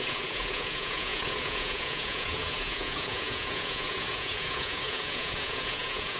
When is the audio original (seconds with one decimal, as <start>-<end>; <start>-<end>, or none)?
none